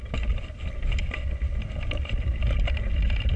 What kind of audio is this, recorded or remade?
recorded